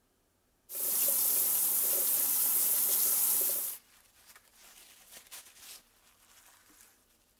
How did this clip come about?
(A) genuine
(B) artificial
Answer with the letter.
A